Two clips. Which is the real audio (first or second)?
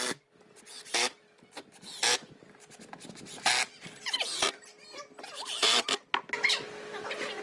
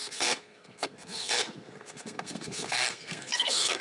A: first